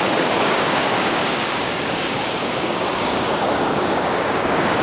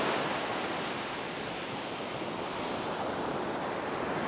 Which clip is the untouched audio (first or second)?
second